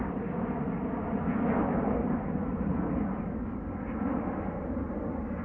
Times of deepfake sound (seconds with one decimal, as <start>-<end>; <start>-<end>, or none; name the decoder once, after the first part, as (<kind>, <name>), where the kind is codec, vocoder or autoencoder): none